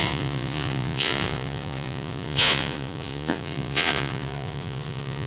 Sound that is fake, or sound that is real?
fake